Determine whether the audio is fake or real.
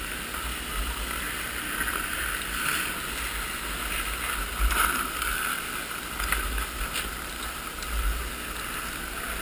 real